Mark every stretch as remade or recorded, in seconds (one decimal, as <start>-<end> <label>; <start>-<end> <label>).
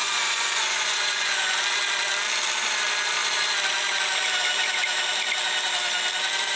0.0-1.6 remade; 1.6-6.6 recorded